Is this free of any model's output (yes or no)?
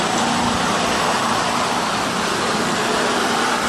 yes